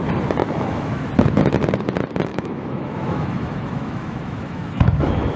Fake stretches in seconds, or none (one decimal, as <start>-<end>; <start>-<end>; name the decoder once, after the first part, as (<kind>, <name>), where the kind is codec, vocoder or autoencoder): 0.4-1.1 (autoencoder, DAC-VAE); 2.3-5.4